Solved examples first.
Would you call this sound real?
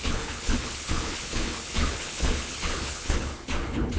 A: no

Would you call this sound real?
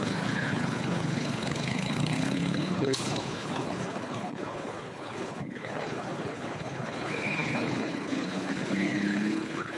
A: no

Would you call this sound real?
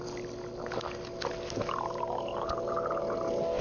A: yes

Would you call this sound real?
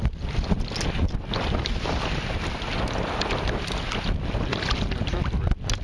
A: yes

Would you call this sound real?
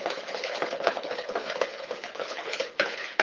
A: no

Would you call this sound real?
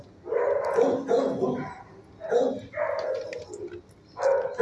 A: yes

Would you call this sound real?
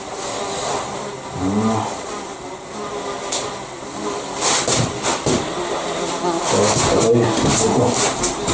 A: yes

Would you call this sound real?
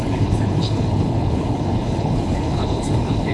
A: no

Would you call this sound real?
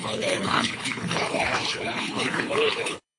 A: no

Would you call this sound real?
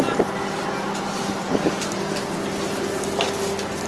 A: yes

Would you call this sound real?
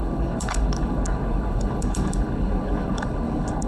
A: no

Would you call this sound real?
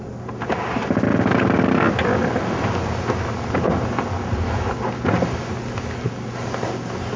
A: yes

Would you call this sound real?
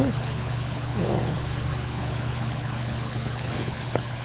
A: no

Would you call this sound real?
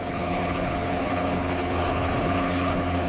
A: no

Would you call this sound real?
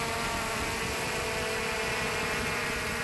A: yes